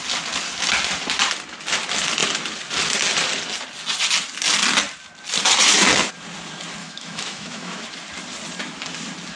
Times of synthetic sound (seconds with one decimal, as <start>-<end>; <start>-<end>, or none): 6.8-7.8